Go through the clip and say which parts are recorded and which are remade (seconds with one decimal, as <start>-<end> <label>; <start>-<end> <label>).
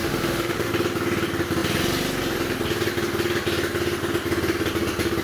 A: 0.0-0.7 remade; 0.7-5.2 recorded